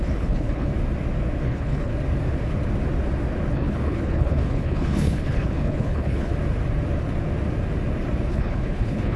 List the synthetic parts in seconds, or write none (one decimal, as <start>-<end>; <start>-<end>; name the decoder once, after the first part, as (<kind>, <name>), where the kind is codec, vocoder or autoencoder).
0.0-0.7 (codec, HILCodec); 1.4-1.9; 3.5-6.3; 8.3-9.2